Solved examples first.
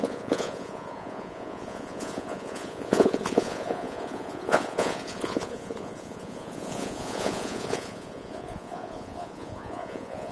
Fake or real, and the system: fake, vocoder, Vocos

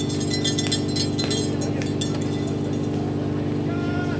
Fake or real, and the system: real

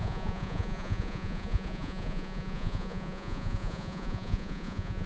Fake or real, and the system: fake, vocoder, Vocos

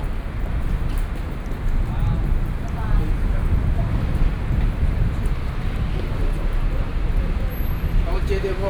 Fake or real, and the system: real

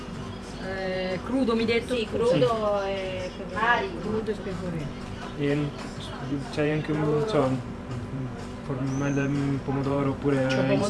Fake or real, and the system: fake, vocoder, BigVGAN v2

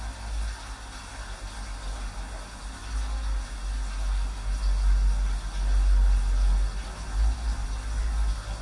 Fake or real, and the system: real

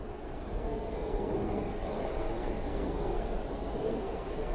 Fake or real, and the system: fake, codec, SNAC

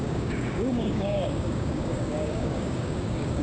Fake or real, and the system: fake, codec, DAC